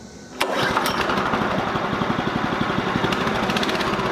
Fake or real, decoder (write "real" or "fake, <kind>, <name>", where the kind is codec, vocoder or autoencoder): real